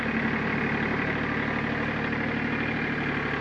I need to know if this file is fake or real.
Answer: real